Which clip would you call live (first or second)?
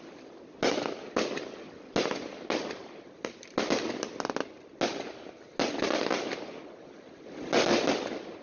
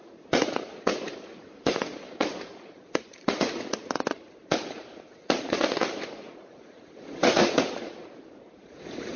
first